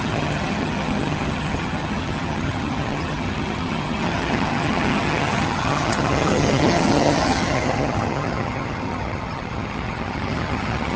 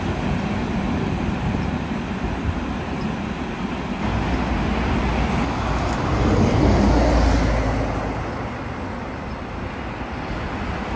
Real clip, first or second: second